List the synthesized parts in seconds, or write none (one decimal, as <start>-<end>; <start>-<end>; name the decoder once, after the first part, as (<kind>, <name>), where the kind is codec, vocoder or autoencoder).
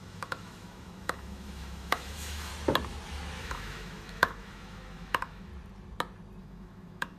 0.0-2.5 (autoencoder, DAC-VAE); 3.4-5.5; 6.4-7.2